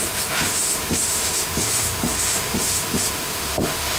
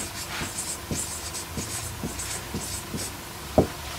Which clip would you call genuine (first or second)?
second